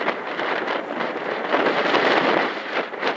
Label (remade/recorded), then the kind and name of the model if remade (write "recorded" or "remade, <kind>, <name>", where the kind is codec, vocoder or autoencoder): remade, vocoder, BigVGAN v2